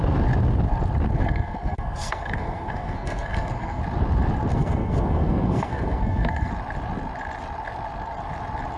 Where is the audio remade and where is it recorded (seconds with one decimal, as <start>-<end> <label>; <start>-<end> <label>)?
0.0-1.1 recorded; 1.1-3.8 remade; 3.8-4.5 recorded; 4.5-6.5 remade; 6.5-8.8 recorded